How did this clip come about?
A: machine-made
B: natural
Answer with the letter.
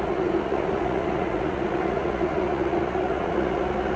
A